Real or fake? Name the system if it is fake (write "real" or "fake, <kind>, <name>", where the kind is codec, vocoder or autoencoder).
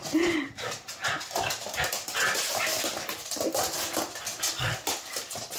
real